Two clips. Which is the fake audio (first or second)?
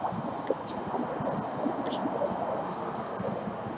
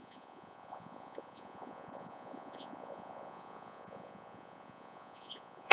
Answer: second